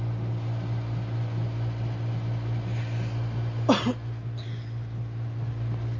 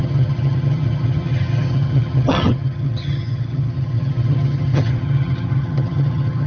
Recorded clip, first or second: first